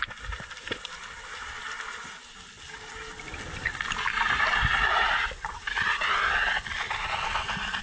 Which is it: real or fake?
real